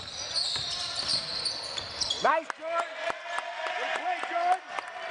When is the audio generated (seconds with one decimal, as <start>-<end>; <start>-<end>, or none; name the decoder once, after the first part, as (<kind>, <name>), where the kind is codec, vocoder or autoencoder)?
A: none